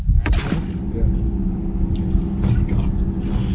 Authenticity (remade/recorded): recorded